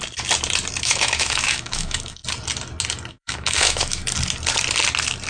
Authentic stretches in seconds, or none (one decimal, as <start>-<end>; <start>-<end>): 0.0-0.8; 2.2-3.1; 4.0-5.3